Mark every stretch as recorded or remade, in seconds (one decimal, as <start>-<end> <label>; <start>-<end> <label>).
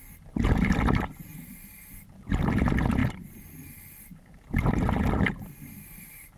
0.0-6.4 recorded